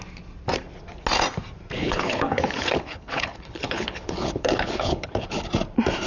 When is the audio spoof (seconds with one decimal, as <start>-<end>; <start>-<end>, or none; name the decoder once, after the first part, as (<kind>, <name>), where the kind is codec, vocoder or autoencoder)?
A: 1.8-5.5 (codec, HILCodec)